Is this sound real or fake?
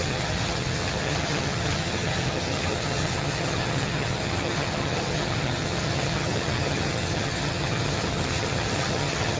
fake